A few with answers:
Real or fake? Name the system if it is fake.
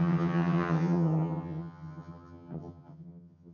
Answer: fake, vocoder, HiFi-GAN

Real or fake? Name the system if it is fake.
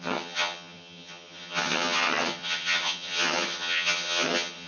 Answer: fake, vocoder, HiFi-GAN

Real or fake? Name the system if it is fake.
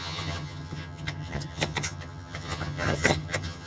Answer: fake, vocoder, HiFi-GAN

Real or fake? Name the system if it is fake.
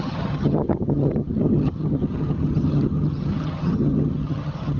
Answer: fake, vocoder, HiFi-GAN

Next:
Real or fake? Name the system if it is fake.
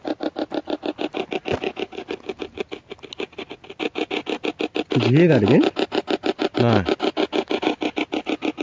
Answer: real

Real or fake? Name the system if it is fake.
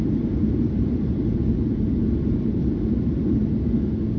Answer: real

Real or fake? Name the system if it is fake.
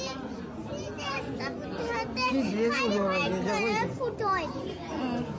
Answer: real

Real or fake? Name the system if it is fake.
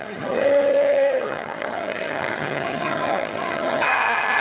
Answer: fake, vocoder, HiFi-GAN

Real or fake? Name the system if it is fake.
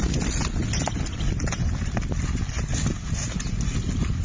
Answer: real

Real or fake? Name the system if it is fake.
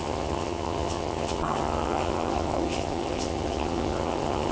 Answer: fake, vocoder, HiFi-GAN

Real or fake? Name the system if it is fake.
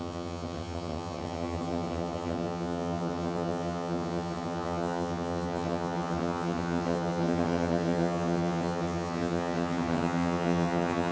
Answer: fake, vocoder, HiFi-GAN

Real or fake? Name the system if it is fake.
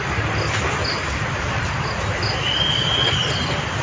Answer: real